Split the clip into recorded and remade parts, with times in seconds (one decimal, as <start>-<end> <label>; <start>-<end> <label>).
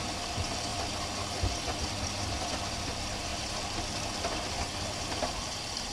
0.0-0.7 remade; 0.7-2.3 recorded; 2.3-3.3 remade; 3.3-4.5 recorded; 4.5-5.9 remade